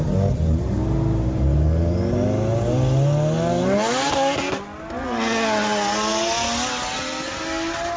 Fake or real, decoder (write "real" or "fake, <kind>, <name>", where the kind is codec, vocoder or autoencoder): real